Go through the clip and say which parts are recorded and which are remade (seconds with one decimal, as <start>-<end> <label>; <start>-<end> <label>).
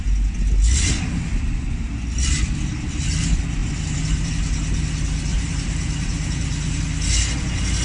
0.0-3.6 recorded; 3.6-4.3 remade; 4.3-5.3 recorded; 5.3-6.8 remade; 6.8-7.8 recorded